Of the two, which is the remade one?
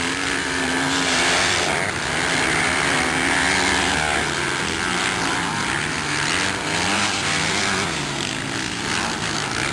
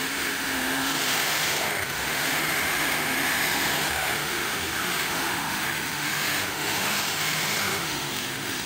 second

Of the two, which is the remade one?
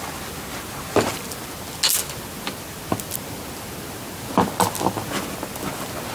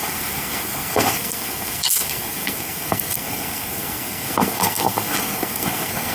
second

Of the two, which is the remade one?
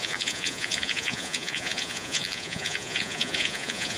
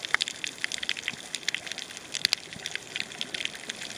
first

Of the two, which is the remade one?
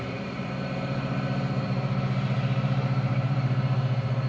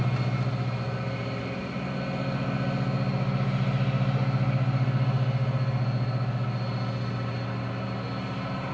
first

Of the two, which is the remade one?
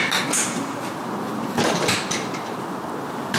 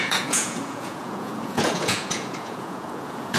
second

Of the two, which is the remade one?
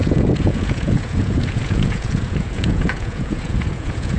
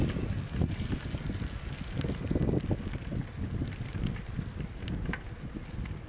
first